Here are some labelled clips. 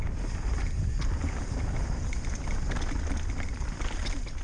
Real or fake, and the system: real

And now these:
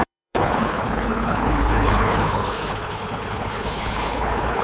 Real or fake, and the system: fake, codec, HILCodec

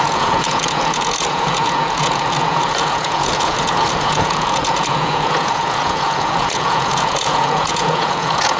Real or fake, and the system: fake, vocoder, Vocos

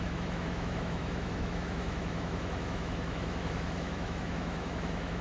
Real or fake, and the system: fake, autoencoder, DAC-VAE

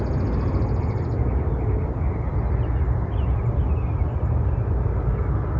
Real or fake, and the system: real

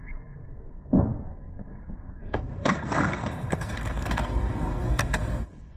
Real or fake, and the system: fake, codec, SNAC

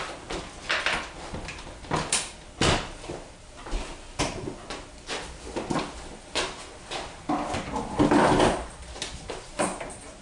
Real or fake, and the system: real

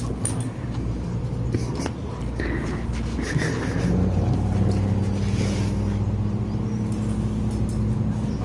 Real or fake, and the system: real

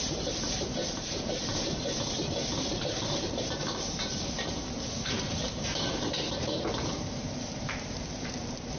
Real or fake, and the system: fake, vocoder, BigVGAN v2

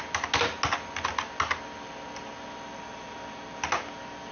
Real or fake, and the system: real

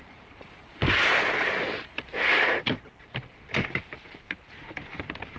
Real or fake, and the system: fake, vocoder, BigVGAN v2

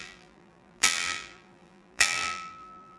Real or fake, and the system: fake, vocoder, BigVGAN v2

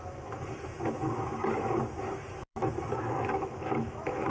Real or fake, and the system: fake, autoencoder, DAC-VAE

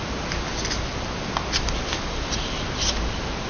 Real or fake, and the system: real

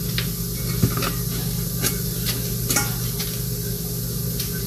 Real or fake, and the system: real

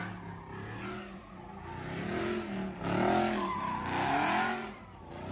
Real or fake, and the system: real